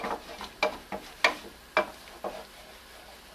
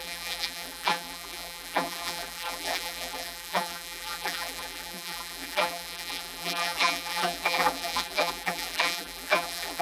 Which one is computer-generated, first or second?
second